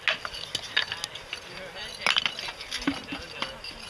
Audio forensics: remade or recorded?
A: recorded